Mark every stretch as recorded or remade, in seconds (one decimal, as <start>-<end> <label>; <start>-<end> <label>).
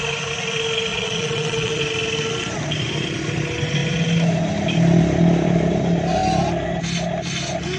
0.0-0.9 recorded; 0.9-1.8 remade; 1.8-7.8 recorded